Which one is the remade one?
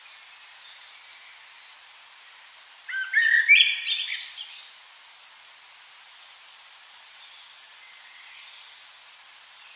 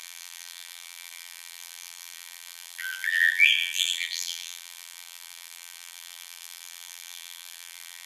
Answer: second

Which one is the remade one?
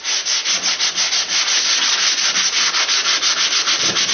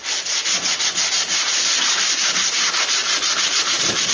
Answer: second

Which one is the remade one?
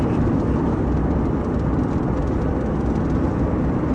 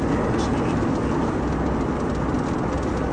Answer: first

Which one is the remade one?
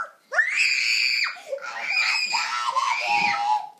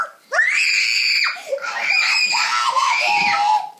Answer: second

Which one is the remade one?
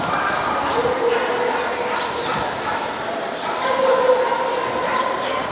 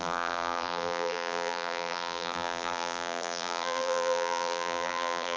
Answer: second